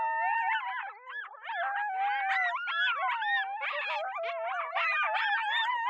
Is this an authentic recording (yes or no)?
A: yes